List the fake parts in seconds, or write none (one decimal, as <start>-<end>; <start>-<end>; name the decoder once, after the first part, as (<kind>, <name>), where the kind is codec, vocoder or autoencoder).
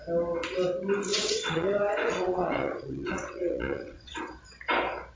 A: 1.1-4.2 (vocoder, WaveNeXt)